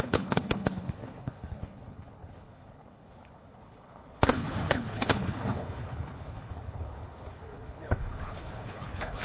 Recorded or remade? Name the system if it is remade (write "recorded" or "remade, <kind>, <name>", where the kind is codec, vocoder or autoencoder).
remade, codec, HILCodec